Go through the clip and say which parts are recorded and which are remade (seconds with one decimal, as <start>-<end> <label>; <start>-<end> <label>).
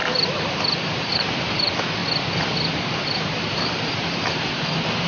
0.0-1.0 recorded; 1.0-2.0 remade; 2.0-2.8 recorded; 2.8-5.1 remade